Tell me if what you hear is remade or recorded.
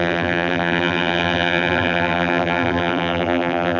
remade